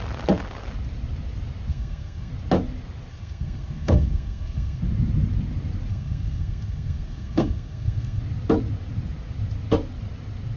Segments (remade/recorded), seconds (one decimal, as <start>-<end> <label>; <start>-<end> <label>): 0.0-1.7 recorded; 1.7-2.3 remade; 2.3-3.1 recorded; 3.1-4.8 remade; 4.8-5.9 recorded; 5.9-8.2 remade; 8.2-10.6 recorded

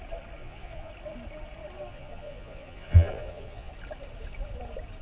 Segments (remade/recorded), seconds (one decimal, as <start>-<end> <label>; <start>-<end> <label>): 0.0-0.4 recorded; 0.4-0.9 remade; 0.9-1.9 recorded; 1.9-3.7 remade; 3.7-5.0 recorded

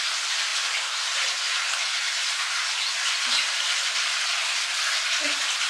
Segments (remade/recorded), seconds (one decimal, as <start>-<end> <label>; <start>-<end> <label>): 0.0-5.7 recorded

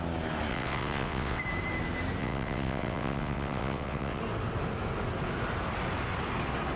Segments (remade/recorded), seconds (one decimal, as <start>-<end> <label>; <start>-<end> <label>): 0.0-0.5 recorded; 0.5-1.4 remade; 1.4-2.2 recorded; 2.2-4.2 remade; 4.2-6.8 recorded

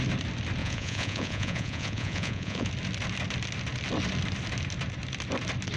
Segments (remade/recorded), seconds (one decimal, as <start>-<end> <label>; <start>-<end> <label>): 0.0-0.6 recorded; 0.6-2.7 remade; 2.7-5.8 recorded